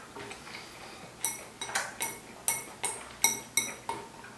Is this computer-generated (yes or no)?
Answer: no